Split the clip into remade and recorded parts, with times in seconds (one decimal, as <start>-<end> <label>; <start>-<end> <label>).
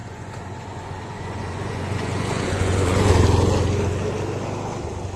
0.0-3.1 remade; 3.1-5.2 recorded